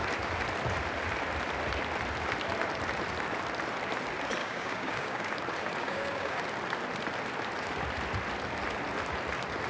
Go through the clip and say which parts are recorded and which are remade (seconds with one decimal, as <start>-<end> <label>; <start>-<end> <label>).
0.0-4.4 recorded; 4.4-5.3 remade; 5.3-5.8 recorded; 5.8-6.4 remade; 6.4-9.7 recorded